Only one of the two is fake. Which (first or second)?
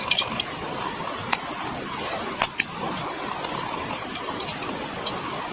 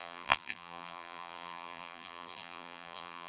second